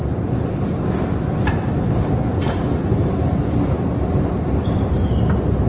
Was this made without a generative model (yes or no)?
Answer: yes